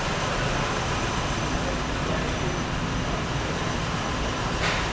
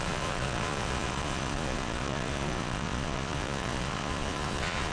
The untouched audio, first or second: first